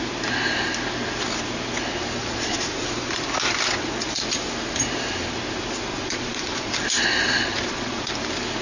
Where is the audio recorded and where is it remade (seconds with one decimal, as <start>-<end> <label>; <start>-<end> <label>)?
0.0-2.2 recorded; 2.2-3.1 remade; 3.1-5.9 recorded; 5.9-6.7 remade; 6.7-7.3 recorded; 7.3-8.1 remade; 8.1-8.6 recorded